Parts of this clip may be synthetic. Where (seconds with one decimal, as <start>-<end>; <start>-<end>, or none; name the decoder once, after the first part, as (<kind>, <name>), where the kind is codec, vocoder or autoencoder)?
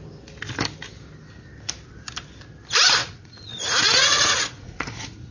3.0-5.3 (vocoder, Vocos)